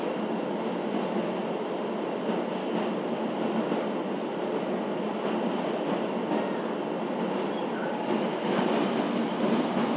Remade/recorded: recorded